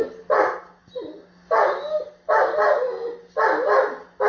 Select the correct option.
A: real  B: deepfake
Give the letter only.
A